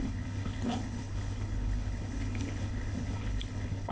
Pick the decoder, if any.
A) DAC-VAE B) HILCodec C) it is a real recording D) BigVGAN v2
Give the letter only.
B